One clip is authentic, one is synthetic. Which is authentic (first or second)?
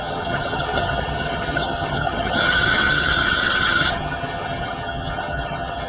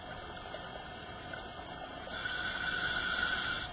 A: second